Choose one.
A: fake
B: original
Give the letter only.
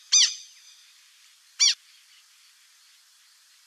B